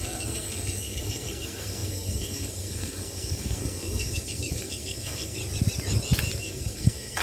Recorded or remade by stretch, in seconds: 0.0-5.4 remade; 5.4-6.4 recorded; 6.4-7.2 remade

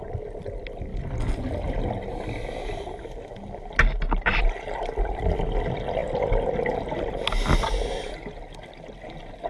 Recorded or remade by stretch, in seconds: 0.0-9.5 recorded

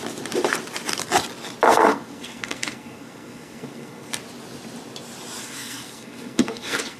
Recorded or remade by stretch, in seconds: 0.0-1.7 recorded; 1.7-4.1 remade; 4.1-5.4 recorded; 5.4-7.0 remade

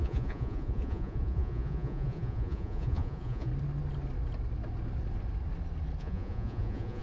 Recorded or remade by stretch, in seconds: 0.0-3.5 remade; 3.5-6.0 recorded; 6.0-7.0 remade

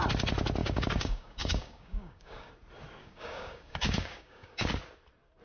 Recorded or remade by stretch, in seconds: 0.0-0.6 recorded; 0.6-2.5 remade; 2.5-3.0 recorded; 3.0-4.8 remade; 4.8-5.4 recorded

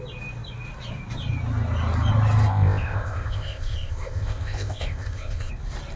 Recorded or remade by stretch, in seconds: 0.0-2.5 recorded; 2.5-5.5 remade; 5.5-6.0 recorded

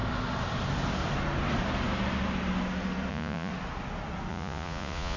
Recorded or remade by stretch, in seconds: 0.0-3.1 recorded; 3.1-3.5 remade; 3.5-4.3 recorded; 4.3-5.2 remade

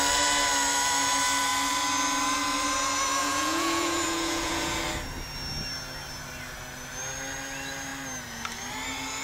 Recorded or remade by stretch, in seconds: 0.0-3.2 recorded; 3.2-4.8 remade; 4.8-9.2 recorded